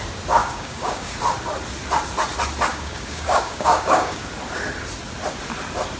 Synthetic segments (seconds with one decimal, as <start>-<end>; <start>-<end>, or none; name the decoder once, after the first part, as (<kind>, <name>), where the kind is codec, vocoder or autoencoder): 0.4-1.2 (codec, DAC); 2.7-4.3